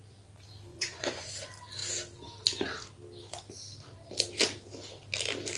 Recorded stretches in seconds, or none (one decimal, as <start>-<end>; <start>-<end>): 0.0-0.7; 1.3-5.6